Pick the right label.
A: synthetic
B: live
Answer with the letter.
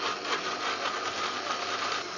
B